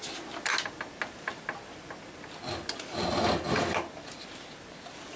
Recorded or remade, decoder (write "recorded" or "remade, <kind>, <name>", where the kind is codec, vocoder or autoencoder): recorded